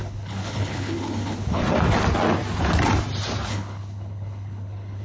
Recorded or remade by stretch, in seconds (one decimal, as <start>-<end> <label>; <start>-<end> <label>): 0.0-1.6 remade; 1.6-3.5 recorded; 3.5-5.0 remade